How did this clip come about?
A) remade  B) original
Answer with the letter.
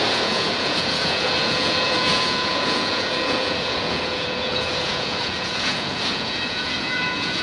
A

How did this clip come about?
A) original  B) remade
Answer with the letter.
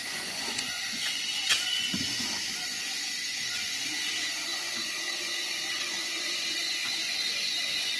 B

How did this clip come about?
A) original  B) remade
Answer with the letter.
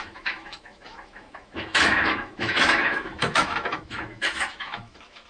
B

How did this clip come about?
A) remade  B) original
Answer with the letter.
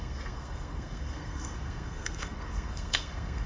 A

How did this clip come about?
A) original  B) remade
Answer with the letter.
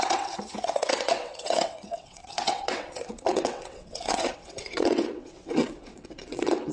B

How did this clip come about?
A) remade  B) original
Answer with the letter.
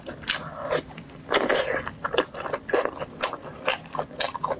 B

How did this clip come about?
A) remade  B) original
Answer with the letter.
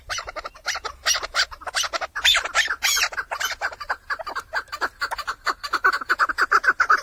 A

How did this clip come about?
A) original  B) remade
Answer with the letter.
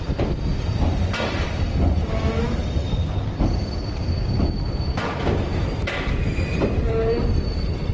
A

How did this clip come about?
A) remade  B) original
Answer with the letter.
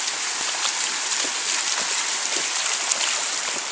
B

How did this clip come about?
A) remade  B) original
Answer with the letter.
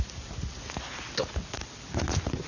B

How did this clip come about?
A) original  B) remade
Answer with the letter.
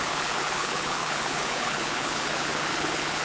B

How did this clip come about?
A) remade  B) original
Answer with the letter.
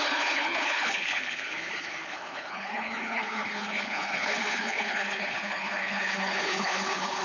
A